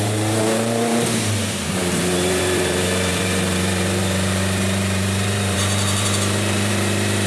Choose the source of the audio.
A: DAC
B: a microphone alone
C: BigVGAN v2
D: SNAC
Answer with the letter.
C